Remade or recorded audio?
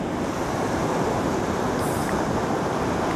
recorded